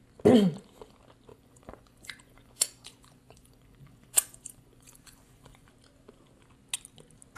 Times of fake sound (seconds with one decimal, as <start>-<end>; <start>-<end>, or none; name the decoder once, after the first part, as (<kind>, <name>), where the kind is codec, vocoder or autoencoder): 1.3-5.7 (vocoder, Vocos)